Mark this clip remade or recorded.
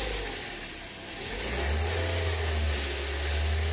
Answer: recorded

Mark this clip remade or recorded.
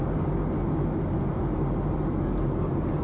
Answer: recorded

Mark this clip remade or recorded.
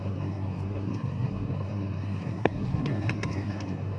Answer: remade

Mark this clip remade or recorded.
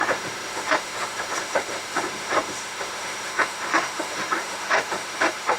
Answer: remade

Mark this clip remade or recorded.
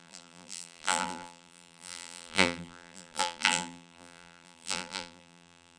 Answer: remade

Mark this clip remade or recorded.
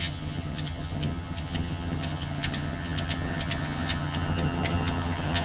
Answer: remade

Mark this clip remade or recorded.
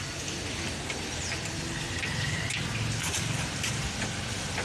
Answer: recorded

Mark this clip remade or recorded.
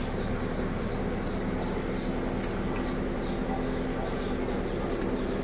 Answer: recorded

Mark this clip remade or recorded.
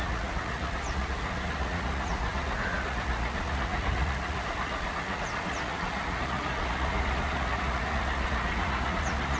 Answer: remade